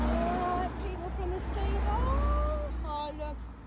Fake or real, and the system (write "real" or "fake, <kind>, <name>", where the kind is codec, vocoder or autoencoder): real